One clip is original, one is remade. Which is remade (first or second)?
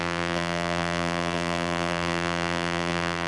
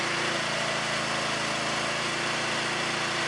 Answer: first